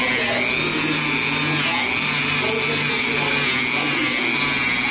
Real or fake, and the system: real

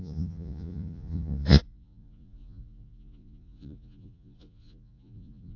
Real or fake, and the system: fake, vocoder, Vocos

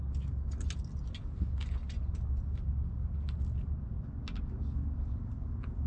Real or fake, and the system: real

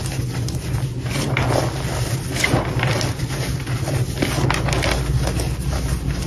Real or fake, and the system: real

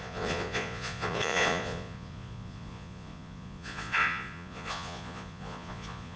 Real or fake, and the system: fake, vocoder, Vocos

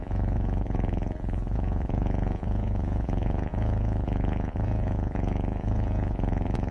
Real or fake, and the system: fake, vocoder, Vocos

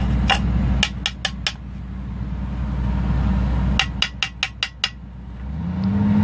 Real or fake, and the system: real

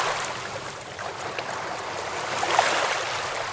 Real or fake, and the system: real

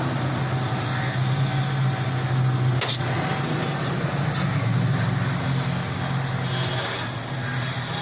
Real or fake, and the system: real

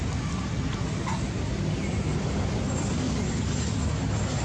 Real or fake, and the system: real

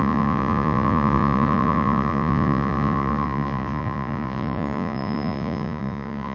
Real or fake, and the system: fake, vocoder, Vocos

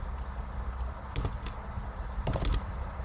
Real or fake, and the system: real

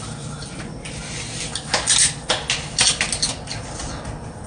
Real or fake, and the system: real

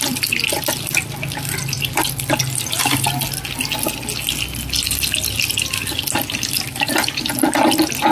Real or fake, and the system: real